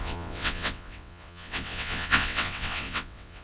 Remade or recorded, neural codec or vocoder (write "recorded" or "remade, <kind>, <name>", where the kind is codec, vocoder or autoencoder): remade, vocoder, WaveNeXt